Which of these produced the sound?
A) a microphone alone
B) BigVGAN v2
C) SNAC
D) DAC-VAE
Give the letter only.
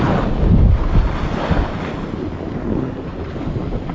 A